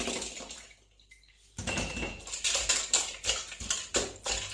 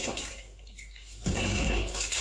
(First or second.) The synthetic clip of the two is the second